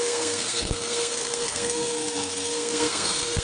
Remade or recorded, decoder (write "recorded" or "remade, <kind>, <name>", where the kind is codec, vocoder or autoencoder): remade, codec, SNAC